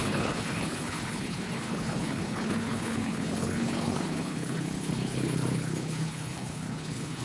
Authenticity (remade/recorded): remade